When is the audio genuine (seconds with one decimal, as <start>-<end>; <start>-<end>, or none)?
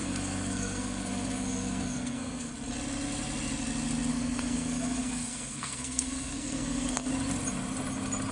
2.5-4.1; 7.1-8.3